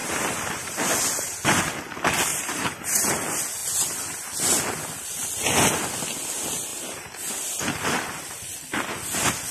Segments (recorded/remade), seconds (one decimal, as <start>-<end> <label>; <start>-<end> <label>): 0.0-0.7 remade; 0.7-2.3 recorded; 2.3-3.1 remade; 3.1-6.7 recorded; 6.7-7.3 remade; 7.3-9.5 recorded